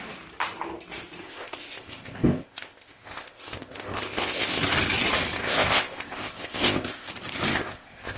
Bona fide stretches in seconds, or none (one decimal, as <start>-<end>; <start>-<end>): 0.0-1.2; 4.6-5.4; 7.1-7.5